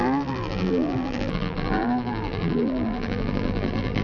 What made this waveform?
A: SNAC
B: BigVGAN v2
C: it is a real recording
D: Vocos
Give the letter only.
B